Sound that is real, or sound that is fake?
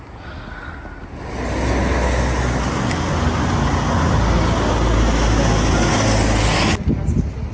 real